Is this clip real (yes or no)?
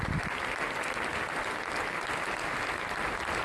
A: yes